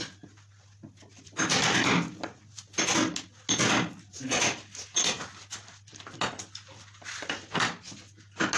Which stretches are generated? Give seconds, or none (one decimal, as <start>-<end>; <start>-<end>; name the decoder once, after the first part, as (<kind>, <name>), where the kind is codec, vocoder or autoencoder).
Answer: none